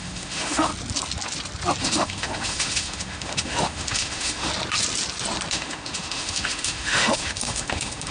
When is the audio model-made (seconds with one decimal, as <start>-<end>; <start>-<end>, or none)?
0.0-0.7; 1.8-4.5; 5.5-8.1